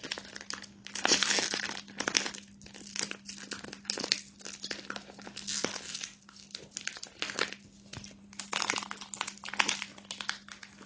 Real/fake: real